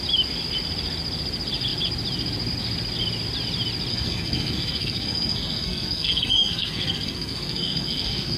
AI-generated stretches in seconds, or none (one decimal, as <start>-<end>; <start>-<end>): 3.9-8.4